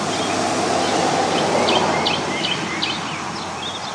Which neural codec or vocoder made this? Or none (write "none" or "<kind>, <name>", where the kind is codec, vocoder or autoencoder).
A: none